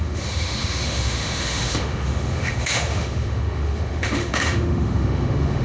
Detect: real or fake fake